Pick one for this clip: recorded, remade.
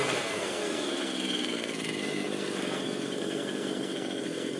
remade